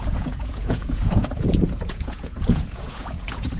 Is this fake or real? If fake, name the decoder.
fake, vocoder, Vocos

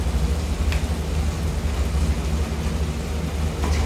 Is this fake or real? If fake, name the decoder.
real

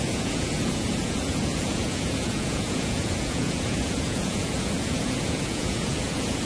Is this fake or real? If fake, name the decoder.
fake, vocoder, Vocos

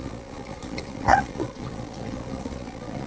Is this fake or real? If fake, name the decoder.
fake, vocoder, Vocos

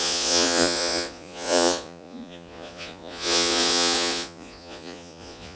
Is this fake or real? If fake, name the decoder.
fake, vocoder, Vocos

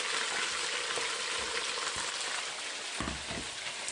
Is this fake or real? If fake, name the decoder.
real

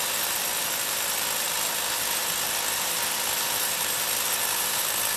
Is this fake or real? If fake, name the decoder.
real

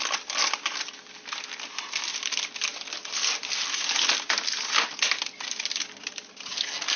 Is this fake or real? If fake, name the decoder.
real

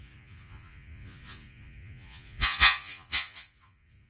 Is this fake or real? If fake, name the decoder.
fake, vocoder, Vocos